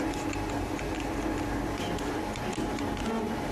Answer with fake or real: real